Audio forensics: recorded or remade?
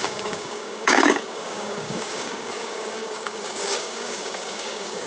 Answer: remade